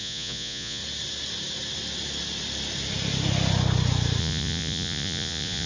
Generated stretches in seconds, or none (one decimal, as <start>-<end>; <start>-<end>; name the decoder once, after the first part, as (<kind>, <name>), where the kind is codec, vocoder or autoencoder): 0.0-0.8 (vocoder, Vocos); 4.2-5.7